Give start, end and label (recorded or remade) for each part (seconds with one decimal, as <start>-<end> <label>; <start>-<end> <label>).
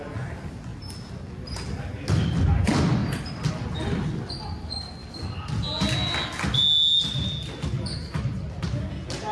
0.0-3.0 recorded; 3.0-4.3 remade; 4.3-9.3 recorded